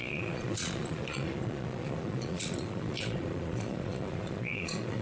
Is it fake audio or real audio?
fake